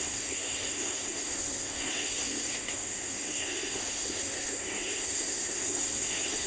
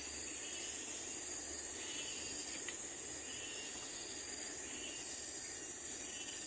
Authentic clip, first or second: second